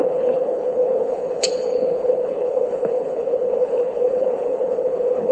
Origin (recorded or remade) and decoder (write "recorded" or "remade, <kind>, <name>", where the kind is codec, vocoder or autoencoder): remade, codec, HILCodec